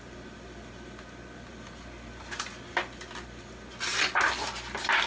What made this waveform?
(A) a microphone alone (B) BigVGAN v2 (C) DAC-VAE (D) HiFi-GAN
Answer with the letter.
A